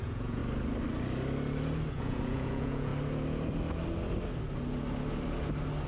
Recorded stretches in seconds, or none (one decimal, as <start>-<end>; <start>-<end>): 0.4-1.9; 2.9-5.9

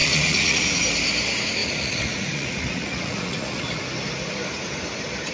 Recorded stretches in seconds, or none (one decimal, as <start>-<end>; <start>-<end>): 0.8-1.6; 3.8-5.3

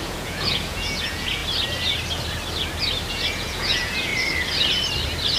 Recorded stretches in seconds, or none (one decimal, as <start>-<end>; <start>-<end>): 1.4-3.1; 4.1-5.4

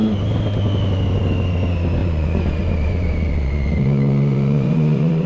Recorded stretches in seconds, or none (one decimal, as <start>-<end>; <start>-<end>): 0.0-2.0

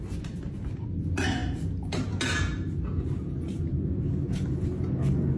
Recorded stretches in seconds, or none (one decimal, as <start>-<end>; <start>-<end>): 0.0-5.4

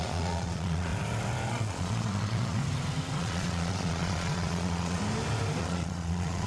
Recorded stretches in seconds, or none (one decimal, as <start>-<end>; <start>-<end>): 0.9-1.5; 2.6-3.2; 5.0-5.6